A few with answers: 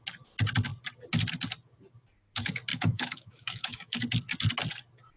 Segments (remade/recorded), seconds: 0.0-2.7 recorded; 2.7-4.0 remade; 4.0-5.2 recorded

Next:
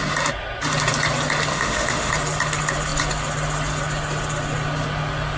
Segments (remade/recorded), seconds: 0.0-1.5 recorded; 1.5-2.1 remade; 2.1-5.4 recorded

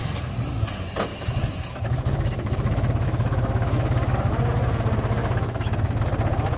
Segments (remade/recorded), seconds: 0.0-1.1 recorded; 1.1-4.3 remade; 4.3-5.2 recorded; 5.2-6.0 remade; 6.0-6.6 recorded